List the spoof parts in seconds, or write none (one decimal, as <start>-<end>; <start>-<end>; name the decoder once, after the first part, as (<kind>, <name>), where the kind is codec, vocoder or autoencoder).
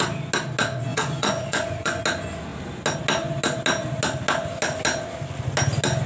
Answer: 0.9-2.0 (vocoder, Vocos)